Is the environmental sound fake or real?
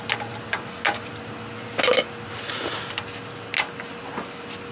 real